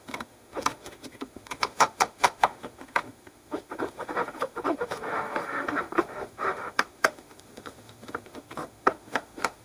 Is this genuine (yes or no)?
no